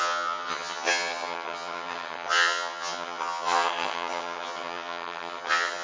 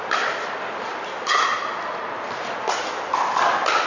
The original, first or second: second